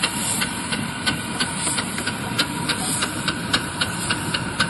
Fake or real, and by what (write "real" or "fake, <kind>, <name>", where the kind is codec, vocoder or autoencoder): fake, vocoder, BigVGAN v2